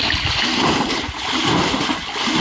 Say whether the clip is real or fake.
real